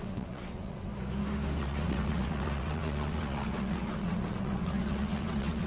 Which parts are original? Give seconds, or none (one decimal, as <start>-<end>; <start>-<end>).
0.9-1.6